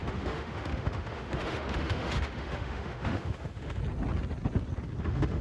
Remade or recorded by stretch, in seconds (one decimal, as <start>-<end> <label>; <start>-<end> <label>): 0.0-3.8 remade; 3.8-5.0 recorded; 5.0-5.4 remade